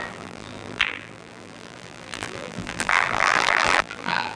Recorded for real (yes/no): no